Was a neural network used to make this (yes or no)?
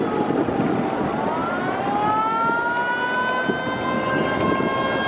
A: no